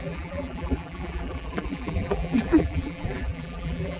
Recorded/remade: remade